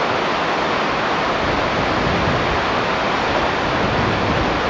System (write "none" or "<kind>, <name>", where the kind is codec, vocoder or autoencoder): none